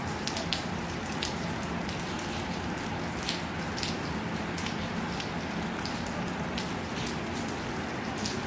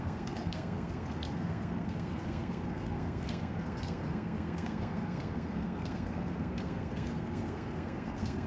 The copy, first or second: second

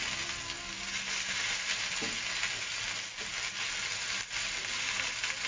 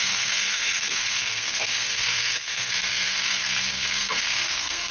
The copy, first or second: second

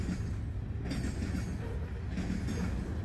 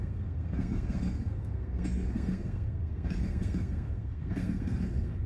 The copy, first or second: second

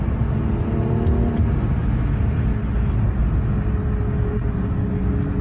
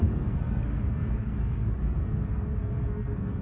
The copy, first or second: second